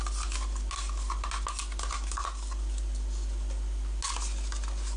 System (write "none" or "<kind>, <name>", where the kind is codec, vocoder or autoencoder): none